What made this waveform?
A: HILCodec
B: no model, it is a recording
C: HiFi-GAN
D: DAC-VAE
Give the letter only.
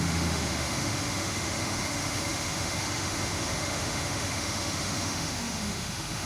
D